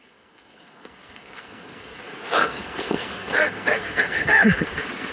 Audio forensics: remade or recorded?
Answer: remade